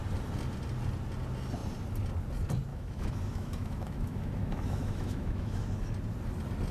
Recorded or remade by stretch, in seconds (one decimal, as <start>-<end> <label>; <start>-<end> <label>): 0.0-2.7 recorded; 2.7-5.9 remade; 5.9-6.7 recorded